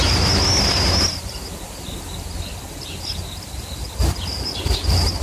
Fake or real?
real